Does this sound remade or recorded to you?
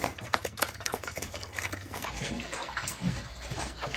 remade